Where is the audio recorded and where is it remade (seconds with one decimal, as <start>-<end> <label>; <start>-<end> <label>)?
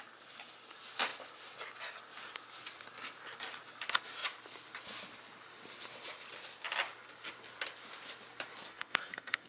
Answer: 0.0-8.6 recorded; 8.6-9.5 remade